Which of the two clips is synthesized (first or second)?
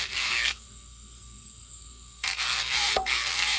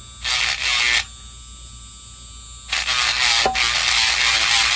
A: first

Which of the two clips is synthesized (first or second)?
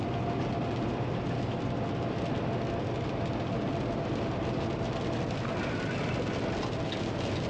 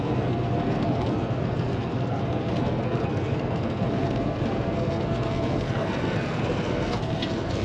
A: second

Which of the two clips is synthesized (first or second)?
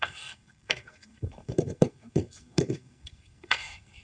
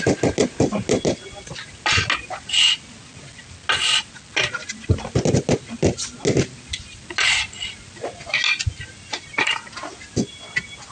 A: first